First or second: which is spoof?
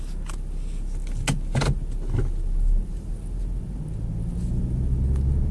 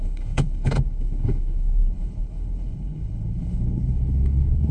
second